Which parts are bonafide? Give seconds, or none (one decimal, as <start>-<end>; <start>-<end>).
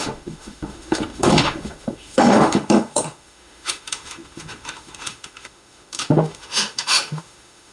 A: none